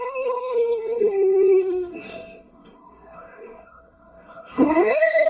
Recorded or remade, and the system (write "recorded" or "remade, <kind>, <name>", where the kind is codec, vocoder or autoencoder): remade, codec, SNAC